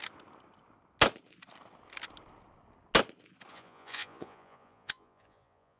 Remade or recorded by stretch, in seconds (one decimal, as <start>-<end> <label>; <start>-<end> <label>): 0.0-3.5 recorded; 3.5-5.8 remade

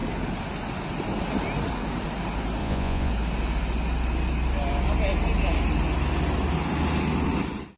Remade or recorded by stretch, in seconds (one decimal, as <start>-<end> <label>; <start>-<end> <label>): 0.0-2.6 recorded; 2.6-3.1 remade; 3.1-7.8 recorded